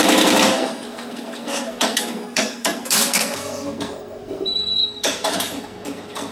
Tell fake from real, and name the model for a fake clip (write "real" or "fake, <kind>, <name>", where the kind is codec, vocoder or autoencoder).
fake, codec, SNAC